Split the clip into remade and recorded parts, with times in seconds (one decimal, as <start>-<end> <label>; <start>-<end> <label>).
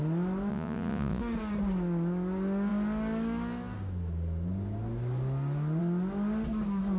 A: 0.0-0.5 recorded; 0.5-1.2 remade; 1.2-7.0 recorded